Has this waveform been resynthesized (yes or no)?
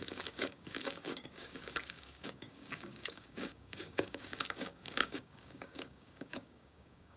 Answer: yes